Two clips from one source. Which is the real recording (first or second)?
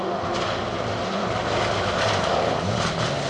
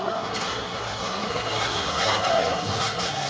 first